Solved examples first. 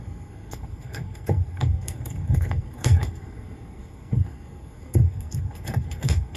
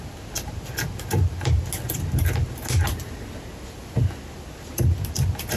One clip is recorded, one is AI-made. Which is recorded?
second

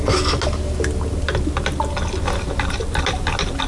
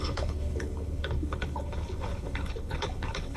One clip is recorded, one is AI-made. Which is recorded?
first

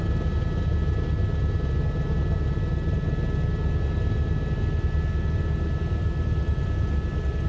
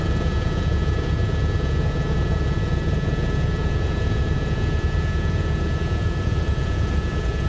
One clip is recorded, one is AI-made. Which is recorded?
first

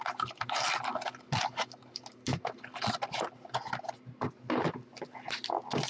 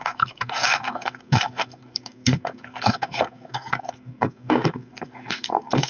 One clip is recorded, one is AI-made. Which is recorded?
first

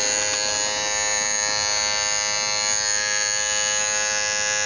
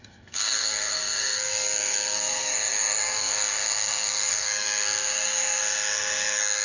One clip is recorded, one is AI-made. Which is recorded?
first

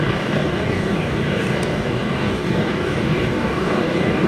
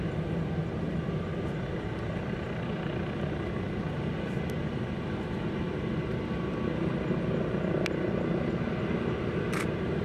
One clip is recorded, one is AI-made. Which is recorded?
second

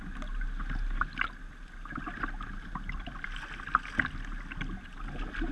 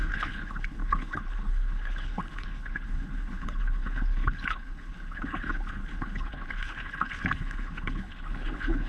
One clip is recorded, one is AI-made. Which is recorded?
first